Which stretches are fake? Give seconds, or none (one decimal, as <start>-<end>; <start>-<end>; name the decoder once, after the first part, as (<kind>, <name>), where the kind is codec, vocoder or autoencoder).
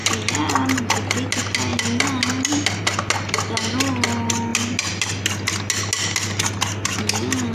none